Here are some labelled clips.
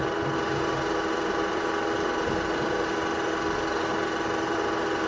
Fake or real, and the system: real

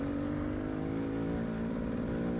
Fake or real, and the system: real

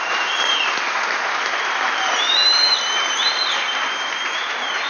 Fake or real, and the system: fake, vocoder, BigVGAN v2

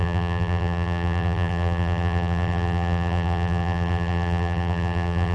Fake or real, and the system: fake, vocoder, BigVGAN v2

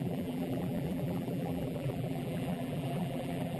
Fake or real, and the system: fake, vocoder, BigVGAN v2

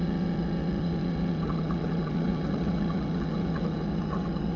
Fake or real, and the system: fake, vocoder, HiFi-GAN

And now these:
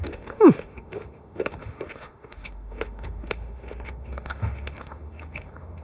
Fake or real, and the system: fake, autoencoder, DAC-VAE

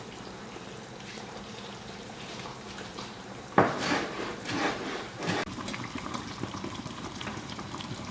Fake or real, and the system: fake, vocoder, BigVGAN v2